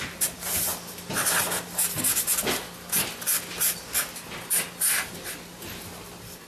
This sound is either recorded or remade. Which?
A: recorded